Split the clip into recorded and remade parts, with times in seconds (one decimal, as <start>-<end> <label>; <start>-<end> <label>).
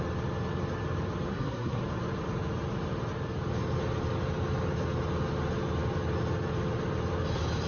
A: 0.0-1.3 recorded; 1.3-1.8 remade; 1.8-7.7 recorded